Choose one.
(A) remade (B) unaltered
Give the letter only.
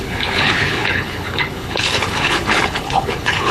A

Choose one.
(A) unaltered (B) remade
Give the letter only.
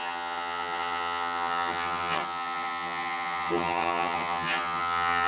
B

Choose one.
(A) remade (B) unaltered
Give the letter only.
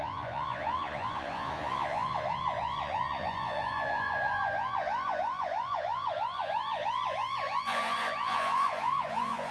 A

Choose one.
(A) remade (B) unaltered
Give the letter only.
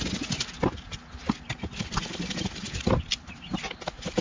B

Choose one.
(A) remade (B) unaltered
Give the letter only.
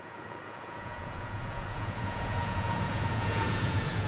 A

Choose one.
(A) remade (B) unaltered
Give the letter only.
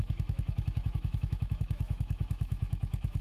A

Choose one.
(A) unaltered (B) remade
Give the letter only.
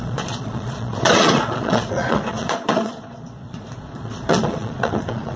B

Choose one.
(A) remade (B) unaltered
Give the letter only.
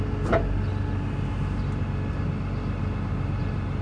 B